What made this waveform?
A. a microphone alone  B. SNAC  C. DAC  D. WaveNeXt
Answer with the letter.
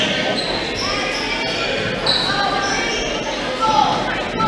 A